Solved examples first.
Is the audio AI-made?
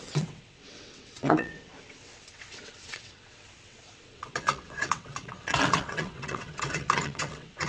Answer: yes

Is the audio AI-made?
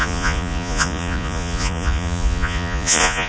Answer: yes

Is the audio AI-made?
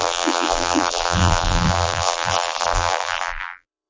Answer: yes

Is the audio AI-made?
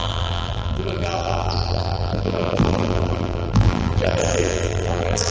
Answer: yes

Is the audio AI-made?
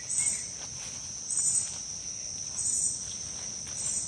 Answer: no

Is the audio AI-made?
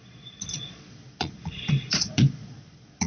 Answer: yes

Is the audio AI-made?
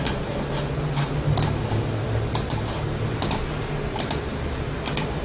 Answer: no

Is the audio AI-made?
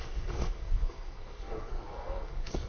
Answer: yes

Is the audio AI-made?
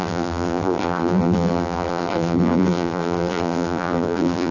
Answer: yes